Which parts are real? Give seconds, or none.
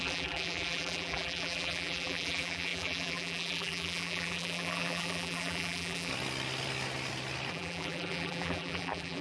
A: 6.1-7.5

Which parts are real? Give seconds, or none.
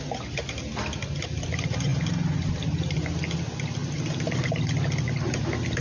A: 0.0-5.8